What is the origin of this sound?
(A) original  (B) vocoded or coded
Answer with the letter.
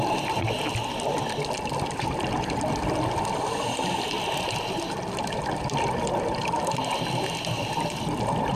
A